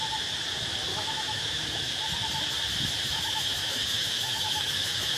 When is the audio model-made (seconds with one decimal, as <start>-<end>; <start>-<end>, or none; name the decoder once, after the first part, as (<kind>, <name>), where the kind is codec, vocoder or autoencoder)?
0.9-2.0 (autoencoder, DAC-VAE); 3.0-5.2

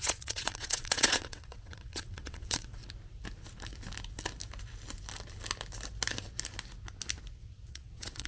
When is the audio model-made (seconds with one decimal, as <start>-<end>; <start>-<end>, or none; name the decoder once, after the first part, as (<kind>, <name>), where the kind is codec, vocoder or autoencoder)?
0.0-2.8 (vocoder, WaveNeXt); 7.7-8.3

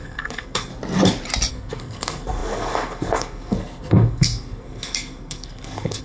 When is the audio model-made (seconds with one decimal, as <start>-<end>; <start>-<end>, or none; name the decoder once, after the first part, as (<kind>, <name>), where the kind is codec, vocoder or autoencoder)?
0.0-0.7 (codec, SNAC); 1.5-6.0

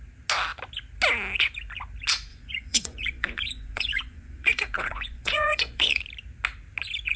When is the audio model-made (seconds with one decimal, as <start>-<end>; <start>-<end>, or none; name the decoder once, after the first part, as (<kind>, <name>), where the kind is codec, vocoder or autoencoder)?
2.3-6.0 (vocoder, Vocos)